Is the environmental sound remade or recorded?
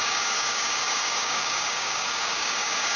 remade